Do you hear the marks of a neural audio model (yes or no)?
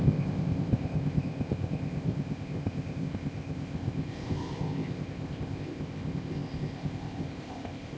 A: yes